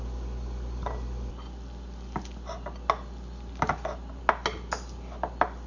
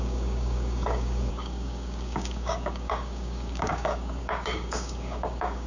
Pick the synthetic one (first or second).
second